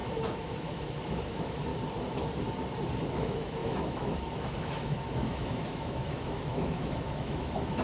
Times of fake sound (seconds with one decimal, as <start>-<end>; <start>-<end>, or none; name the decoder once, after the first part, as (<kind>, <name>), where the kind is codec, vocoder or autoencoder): 0.0-1.7 (autoencoder, DAC-VAE); 3.1-7.8

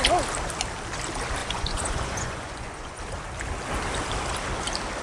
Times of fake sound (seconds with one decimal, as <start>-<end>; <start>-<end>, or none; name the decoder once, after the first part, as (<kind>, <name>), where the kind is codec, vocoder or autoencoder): 1.4-3.0 (vocoder, Vocos)

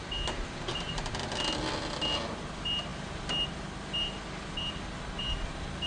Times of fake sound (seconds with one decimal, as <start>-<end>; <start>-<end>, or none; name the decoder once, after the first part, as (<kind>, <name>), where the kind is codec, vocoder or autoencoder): none

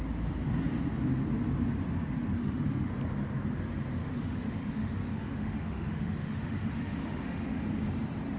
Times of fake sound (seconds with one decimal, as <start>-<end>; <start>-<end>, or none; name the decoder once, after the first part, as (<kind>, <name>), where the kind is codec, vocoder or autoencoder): 2.4-2.9 (autoencoder, DAC-VAE); 4.0-7.6

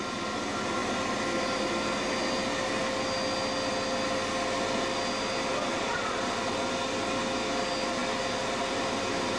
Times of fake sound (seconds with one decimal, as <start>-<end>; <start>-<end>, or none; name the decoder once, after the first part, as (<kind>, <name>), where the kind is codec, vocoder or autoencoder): 5.7-6.2 (vocoder, Vocos)